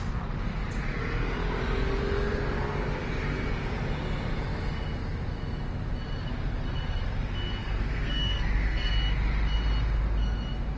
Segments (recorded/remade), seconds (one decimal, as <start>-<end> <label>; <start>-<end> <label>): 0.0-7.6 recorded; 7.6-8.9 remade; 8.9-10.8 recorded